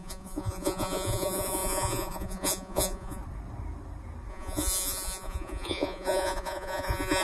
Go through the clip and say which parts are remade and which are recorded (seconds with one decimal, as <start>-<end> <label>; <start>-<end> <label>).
0.0-3.2 remade; 3.2-4.3 recorded; 4.3-7.2 remade